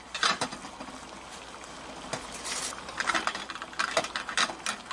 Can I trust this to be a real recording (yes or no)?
yes